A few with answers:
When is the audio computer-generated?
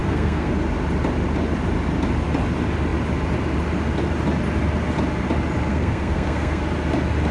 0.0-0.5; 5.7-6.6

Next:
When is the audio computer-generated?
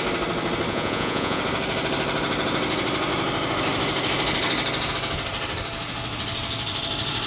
0.7-1.4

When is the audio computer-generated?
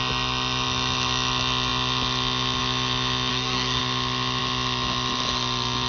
3.3-3.8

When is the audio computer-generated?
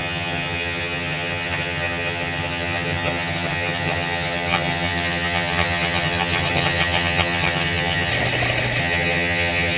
0.0-8.1; 8.8-9.8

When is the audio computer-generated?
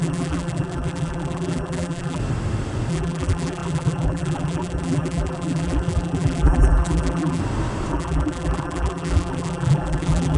0.0-2.2; 2.9-7.4; 7.9-10.4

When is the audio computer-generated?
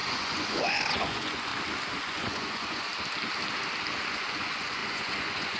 0.0-1.5; 2.0-2.9; 4.0-5.6